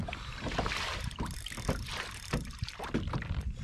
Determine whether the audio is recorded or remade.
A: recorded